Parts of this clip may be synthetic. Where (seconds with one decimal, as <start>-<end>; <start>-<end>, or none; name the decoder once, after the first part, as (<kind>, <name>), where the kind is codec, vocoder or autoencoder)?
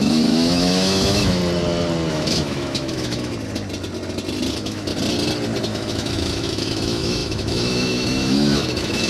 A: 0.0-1.4 (autoencoder, DAC-VAE); 2.1-3.3; 4.5-4.9; 5.6-9.1